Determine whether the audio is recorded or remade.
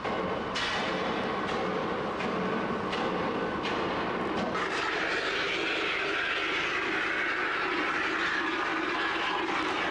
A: recorded